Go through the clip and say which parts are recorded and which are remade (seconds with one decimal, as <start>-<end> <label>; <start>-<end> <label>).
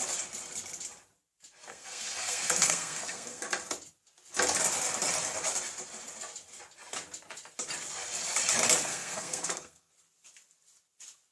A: 0.0-1.7 recorded; 1.7-3.4 remade; 3.4-8.9 recorded; 8.9-9.9 remade; 9.9-11.3 recorded